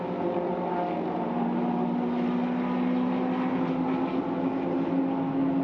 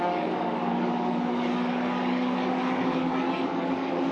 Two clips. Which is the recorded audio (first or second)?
first